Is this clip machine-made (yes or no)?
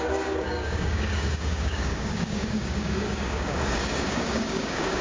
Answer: yes